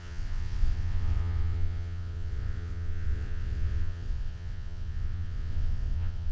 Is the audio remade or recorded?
remade